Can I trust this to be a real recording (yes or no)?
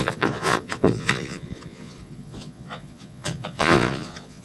no